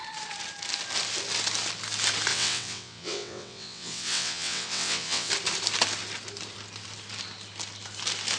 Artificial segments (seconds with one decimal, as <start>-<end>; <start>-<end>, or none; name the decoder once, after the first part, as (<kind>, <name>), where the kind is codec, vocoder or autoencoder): 2.3-5.3 (vocoder, WaveNeXt)